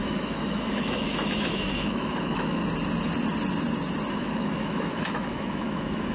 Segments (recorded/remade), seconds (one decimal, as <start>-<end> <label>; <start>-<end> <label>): 0.0-2.6 remade; 2.6-4.1 recorded; 4.1-6.1 remade